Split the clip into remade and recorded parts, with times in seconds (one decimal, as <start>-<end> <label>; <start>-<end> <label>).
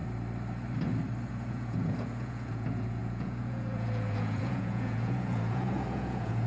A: 0.0-1.3 recorded; 1.3-6.5 remade